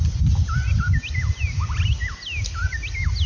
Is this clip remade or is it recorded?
recorded